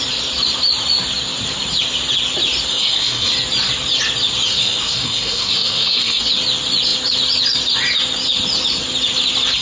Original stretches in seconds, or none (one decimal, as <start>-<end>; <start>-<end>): 0.0-2.7; 3.3-4.5; 6.3-9.6